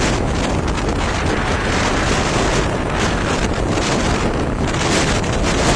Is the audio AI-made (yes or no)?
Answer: no